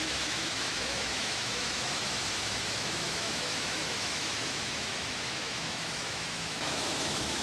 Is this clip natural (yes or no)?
no